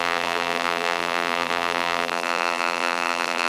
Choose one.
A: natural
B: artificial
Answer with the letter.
B